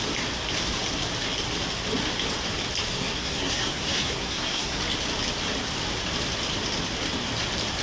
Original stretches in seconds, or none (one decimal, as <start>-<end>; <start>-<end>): 0.0-2.9; 4.8-7.8